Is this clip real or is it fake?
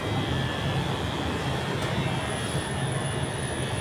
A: real